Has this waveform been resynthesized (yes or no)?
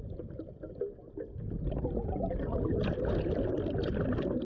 no